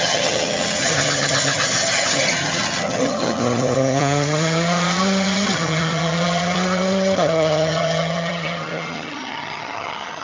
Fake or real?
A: fake